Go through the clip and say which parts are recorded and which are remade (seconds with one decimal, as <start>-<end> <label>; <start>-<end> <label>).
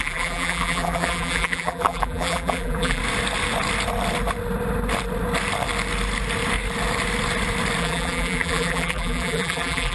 0.0-3.0 remade; 3.0-7.8 recorded; 7.8-9.9 remade